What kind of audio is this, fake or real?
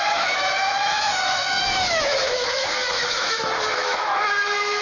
fake